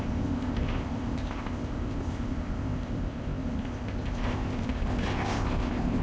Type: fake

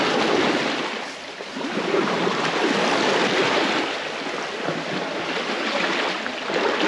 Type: real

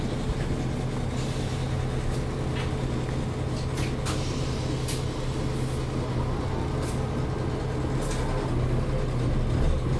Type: real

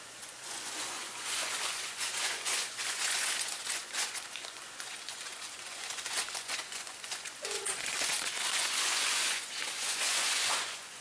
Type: fake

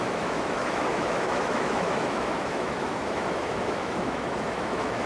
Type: fake